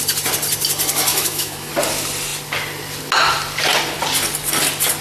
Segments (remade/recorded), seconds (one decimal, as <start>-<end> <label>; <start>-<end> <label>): 0.0-1.1 recorded; 1.1-1.7 remade; 1.7-5.0 recorded